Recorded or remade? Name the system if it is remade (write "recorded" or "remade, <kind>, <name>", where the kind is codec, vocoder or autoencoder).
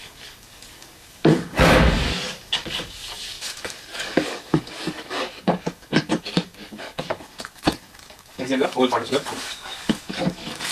remade, codec, DAC